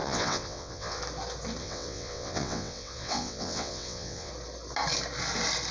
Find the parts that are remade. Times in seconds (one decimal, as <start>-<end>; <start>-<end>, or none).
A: 0.0-1.0; 1.6-4.3